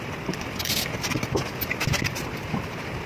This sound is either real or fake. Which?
real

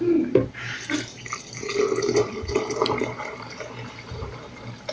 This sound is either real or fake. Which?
fake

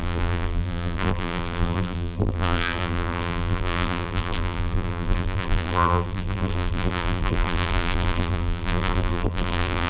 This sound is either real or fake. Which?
fake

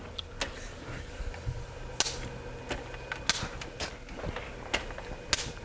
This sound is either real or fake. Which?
real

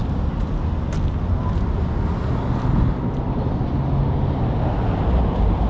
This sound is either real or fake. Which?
real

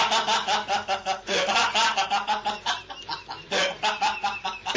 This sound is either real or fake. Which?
real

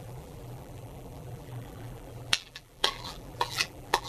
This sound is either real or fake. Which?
fake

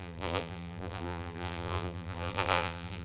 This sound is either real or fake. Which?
fake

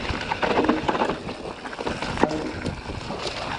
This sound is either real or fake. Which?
real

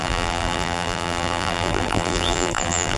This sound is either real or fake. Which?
fake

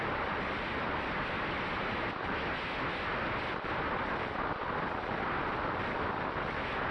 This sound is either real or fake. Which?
real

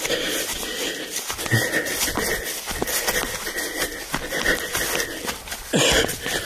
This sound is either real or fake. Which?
real